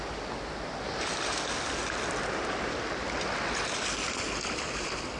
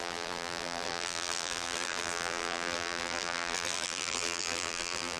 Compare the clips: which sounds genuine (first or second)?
first